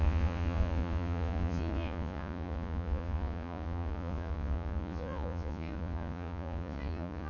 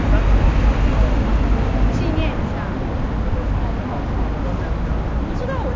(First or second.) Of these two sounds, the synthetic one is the first